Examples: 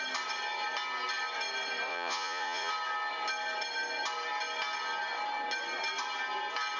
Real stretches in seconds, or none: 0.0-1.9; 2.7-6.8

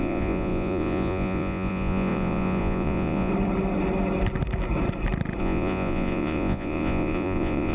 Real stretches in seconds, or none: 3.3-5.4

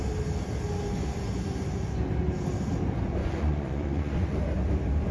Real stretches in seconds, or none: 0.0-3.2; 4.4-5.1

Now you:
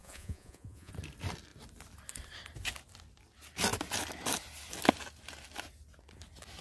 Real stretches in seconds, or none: 0.9-6.6

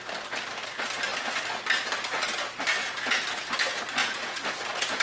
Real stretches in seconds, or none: 0.0-2.8; 3.5-4.0

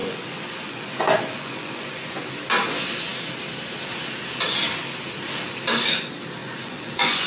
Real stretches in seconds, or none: 2.2-6.4

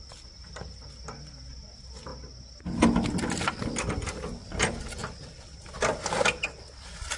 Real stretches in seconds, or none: 0.0-7.2